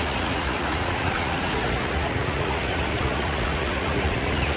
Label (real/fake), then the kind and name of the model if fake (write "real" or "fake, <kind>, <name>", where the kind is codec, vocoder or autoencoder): fake, vocoder, Vocos